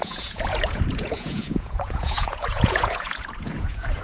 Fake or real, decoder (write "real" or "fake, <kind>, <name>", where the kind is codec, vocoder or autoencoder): fake, vocoder, Vocos